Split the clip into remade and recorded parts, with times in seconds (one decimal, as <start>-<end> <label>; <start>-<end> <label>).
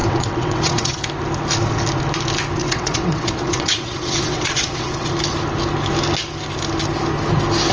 0.0-1.0 remade; 1.0-2.6 recorded; 2.6-5.1 remade; 5.1-7.7 recorded